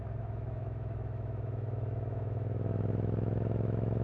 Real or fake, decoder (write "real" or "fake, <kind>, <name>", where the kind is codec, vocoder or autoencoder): fake, autoencoder, DAC-VAE